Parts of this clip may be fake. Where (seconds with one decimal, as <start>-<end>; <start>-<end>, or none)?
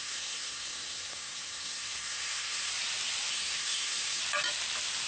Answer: 0.0-2.7; 3.3-4.2